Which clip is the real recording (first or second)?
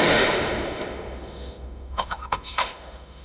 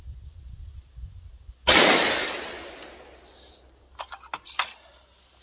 second